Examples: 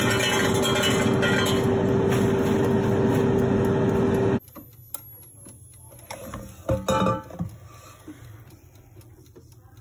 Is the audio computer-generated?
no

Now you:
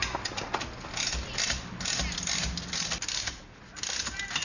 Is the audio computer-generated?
no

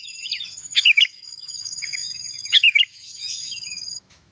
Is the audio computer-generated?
yes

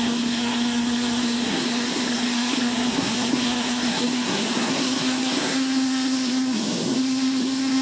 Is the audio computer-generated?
yes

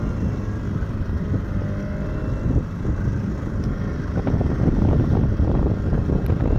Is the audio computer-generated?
no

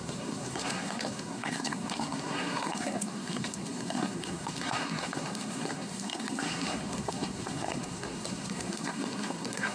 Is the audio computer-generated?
yes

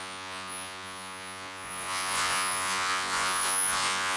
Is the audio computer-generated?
yes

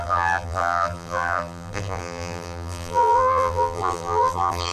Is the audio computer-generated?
yes